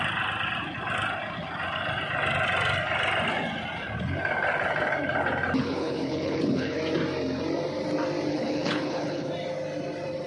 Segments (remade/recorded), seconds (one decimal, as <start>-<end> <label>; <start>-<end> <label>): 0.0-5.6 recorded; 5.6-6.8 remade; 6.8-8.3 recorded; 8.3-9.3 remade; 9.3-10.3 recorded